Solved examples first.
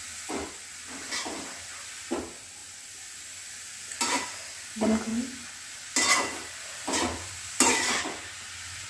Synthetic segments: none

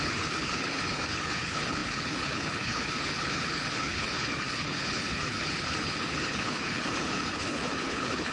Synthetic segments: 0.0-8.3 (codec, HILCodec)

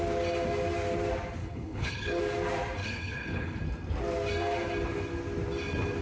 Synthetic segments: 1.4-2.2 (codec, HILCodec); 2.8-3.6

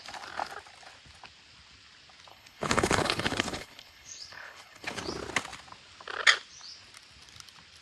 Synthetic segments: 2.3-5.0 (codec, HILCodec)

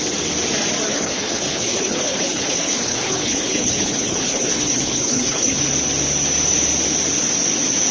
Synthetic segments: 0.9-5.6 (codec, HILCodec)